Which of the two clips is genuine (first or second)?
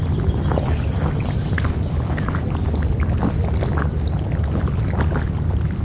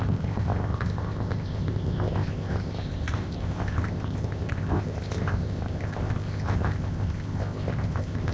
first